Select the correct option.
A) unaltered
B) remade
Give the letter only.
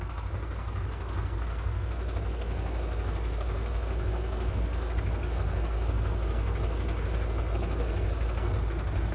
B